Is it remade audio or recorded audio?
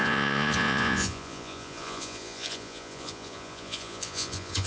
remade